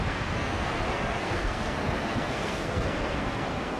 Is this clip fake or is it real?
fake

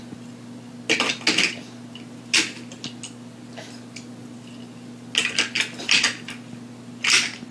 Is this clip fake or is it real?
real